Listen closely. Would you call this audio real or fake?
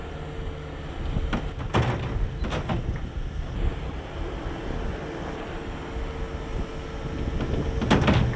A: real